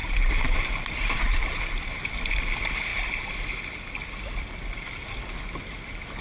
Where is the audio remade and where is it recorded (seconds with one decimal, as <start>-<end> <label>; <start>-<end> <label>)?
0.0-1.6 remade; 1.6-6.2 recorded